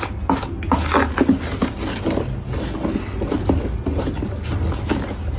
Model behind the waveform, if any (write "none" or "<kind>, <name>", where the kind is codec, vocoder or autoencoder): none